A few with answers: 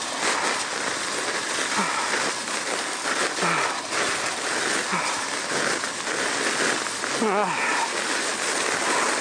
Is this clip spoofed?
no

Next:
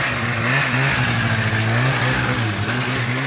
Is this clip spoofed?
no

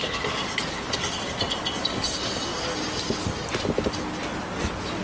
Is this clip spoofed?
no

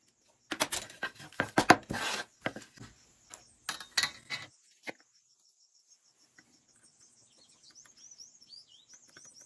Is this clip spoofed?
no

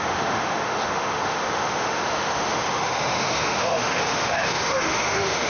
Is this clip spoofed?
yes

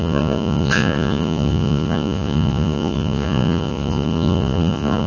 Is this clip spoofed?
yes